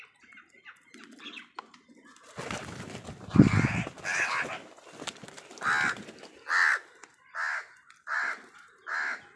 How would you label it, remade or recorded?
recorded